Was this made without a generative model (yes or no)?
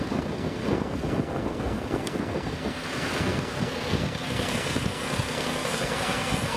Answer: no